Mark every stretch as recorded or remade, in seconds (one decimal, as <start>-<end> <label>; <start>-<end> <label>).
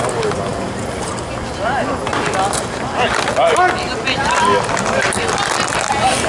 0.0-6.3 recorded